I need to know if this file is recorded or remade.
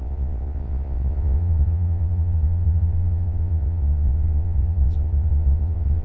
remade